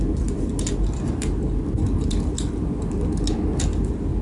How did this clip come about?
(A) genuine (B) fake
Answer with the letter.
A